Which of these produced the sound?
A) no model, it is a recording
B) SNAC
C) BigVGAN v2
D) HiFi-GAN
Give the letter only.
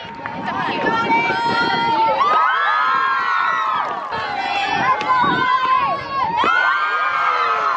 A